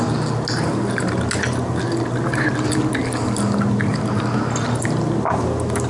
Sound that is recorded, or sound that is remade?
recorded